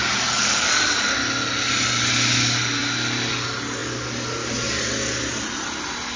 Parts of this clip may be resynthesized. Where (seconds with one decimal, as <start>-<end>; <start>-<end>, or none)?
none

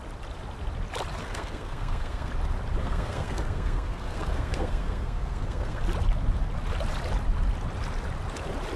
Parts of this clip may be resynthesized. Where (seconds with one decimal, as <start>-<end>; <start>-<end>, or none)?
1.2-2.3; 2.8-5.8

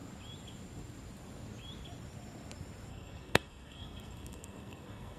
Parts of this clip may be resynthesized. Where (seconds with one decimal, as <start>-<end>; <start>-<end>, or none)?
2.9-5.2